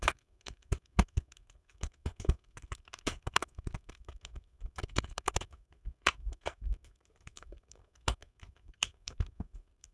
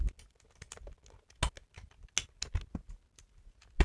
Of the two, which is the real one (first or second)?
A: second